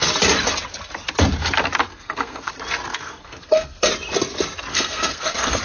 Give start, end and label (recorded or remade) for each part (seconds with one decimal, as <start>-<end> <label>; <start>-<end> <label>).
0.0-1.9 recorded; 1.9-2.5 remade; 2.5-2.9 recorded; 2.9-3.9 remade; 3.9-4.7 recorded; 4.7-5.6 remade